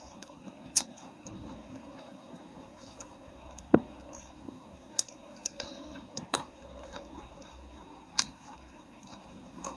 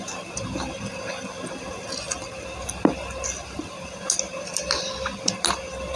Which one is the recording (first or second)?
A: second